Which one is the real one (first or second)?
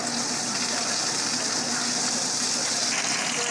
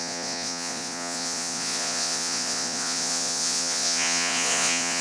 first